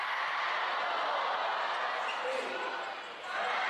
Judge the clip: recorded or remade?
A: recorded